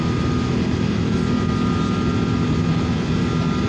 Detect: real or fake real